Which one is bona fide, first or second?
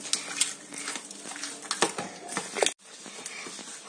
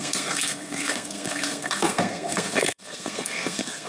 first